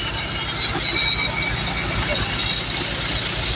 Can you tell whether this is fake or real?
real